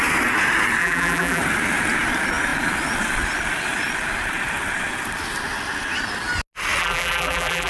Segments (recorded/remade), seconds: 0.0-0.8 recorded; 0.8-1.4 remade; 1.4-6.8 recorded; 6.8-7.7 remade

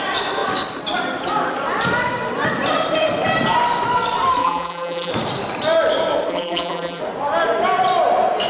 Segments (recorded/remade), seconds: 0.0-4.4 recorded; 4.4-5.1 remade; 5.1-6.3 recorded; 6.3-7.0 remade; 7.0-8.5 recorded

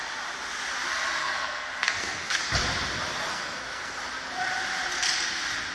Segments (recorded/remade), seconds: 0.0-1.2 recorded; 1.2-2.4 remade; 2.4-3.3 recorded; 3.3-4.0 remade; 4.0-5.7 recorded